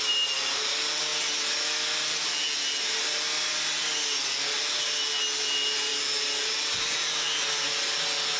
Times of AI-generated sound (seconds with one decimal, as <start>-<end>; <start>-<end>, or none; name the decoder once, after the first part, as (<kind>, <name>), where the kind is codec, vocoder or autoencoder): none